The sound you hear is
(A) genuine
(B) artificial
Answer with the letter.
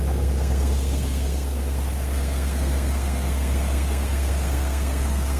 B